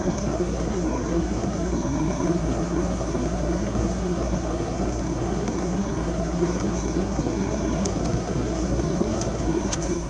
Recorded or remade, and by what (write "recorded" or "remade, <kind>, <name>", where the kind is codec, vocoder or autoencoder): remade, codec, SNAC